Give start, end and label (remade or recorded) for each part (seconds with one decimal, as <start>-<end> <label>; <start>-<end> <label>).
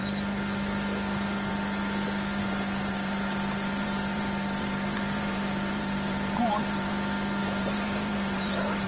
0.0-2.4 recorded; 2.4-6.9 remade; 6.9-7.4 recorded; 7.4-8.9 remade